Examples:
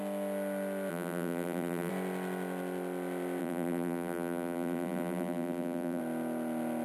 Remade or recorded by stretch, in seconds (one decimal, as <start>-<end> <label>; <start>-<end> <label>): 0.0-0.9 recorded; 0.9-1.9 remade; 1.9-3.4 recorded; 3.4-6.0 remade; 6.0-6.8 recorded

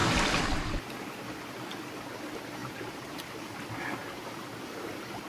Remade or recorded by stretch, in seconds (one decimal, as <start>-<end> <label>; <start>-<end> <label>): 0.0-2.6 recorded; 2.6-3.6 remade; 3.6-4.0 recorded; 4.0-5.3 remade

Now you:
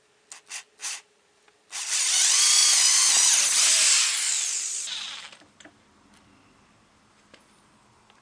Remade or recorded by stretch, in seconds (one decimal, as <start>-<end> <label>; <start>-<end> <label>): 0.0-0.8 recorded; 0.8-1.6 remade; 1.6-8.2 recorded

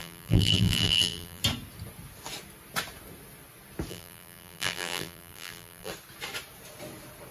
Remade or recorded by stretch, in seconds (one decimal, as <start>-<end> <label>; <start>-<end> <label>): 0.0-1.4 remade; 1.4-3.9 recorded; 3.9-5.9 remade; 5.9-7.3 recorded